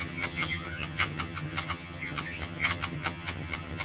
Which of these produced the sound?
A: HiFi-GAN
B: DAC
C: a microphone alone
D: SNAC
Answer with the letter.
A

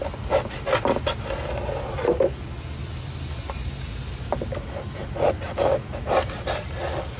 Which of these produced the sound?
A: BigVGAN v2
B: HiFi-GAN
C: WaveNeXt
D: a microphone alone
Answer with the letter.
D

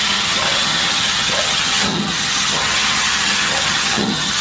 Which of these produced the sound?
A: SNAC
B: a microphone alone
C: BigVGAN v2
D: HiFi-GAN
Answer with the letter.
D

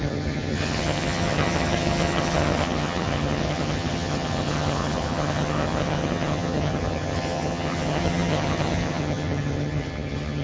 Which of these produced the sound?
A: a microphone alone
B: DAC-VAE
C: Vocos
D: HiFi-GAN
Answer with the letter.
D